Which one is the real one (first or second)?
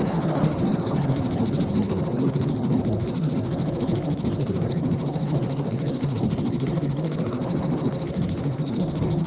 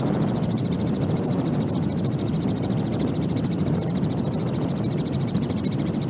second